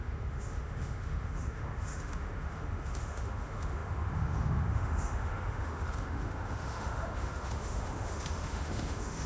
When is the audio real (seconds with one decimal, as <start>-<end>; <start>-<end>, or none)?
none